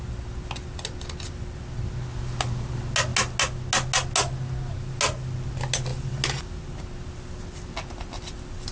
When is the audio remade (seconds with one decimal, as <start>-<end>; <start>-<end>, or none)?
none